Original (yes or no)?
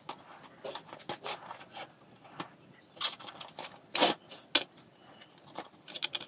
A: yes